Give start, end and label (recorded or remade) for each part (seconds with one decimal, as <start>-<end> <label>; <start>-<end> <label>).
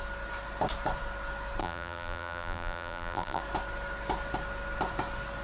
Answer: 0.0-1.6 recorded; 1.6-3.4 remade; 3.4-5.4 recorded